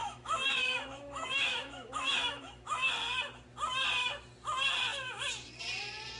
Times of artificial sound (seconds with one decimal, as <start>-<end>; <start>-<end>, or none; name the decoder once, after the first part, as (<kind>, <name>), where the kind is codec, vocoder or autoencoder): 0.0-2.9 (autoencoder, DAC-VAE)

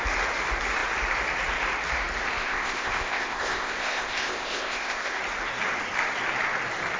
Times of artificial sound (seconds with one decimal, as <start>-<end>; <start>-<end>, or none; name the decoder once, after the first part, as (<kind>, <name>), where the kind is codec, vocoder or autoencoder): 2.4-5.2 (codec, ZipCodec)

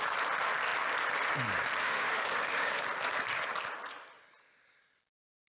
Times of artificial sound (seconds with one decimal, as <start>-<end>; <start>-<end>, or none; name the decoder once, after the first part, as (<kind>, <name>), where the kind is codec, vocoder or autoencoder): 1.8-2.8 (autoencoder, DAC-VAE)

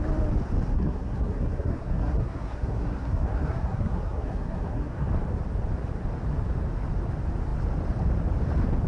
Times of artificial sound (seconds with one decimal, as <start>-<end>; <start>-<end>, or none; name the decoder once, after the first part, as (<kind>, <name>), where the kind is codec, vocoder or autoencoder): 0.7-5.1 (codec, SNAC)

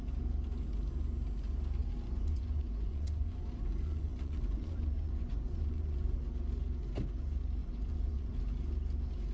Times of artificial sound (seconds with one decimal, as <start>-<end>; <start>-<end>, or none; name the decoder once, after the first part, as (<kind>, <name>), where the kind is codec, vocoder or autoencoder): 1.8-6.2 (vocoder, Vocos); 7.6-8.4

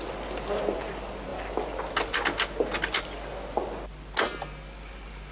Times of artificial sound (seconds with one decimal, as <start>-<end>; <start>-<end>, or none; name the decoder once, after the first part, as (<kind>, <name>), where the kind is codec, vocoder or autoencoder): none